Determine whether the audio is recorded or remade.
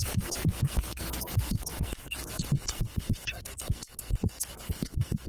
remade